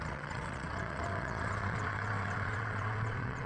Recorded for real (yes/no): no